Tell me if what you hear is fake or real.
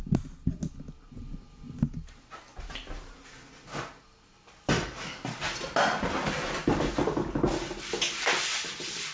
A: real